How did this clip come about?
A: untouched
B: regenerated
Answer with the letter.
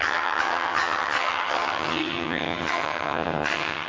B